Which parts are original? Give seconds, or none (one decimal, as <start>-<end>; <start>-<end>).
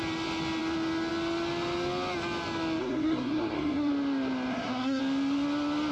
0.0-2.8; 3.9-4.5; 5.0-5.9